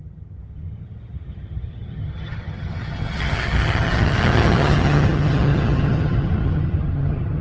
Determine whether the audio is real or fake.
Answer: fake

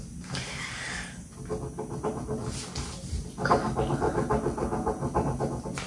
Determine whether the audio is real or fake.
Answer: real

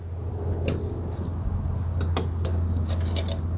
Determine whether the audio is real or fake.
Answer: real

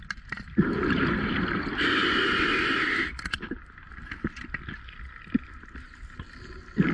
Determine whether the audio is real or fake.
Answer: real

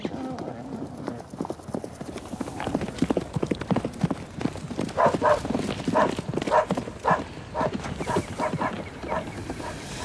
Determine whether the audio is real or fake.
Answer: real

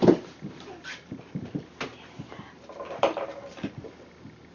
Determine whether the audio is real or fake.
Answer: fake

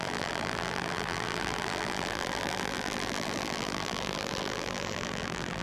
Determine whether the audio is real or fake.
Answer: fake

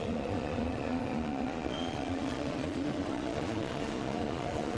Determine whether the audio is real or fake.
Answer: fake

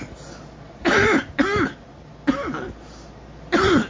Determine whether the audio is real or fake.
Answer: real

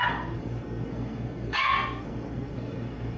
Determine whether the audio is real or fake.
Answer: fake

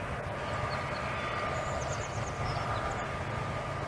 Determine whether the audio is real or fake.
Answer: real